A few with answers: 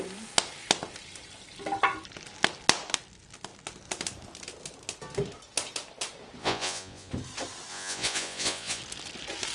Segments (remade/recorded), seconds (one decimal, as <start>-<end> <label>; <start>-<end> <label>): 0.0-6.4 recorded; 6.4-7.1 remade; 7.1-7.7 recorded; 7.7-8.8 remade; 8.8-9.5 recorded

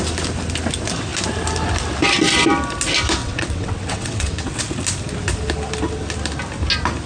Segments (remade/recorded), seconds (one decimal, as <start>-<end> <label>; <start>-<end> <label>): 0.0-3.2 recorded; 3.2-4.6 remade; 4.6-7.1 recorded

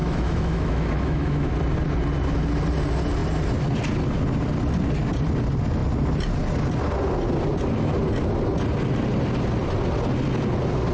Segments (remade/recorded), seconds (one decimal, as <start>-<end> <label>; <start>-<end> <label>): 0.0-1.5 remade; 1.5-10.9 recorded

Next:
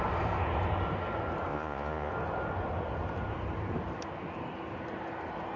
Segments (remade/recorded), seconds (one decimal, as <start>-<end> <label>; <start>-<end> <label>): 0.0-1.5 recorded; 1.5-2.1 remade; 2.1-5.6 recorded

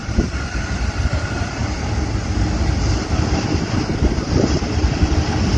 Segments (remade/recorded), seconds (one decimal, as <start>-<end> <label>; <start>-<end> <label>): 0.0-5.6 recorded